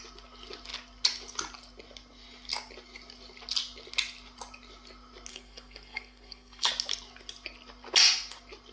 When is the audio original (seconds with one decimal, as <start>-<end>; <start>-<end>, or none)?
0.0-5.3; 6.7-8.7